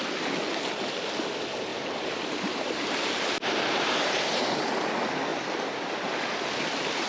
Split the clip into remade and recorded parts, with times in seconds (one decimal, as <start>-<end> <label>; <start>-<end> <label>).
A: 0.0-1.7 recorded; 1.7-4.6 remade; 4.6-7.1 recorded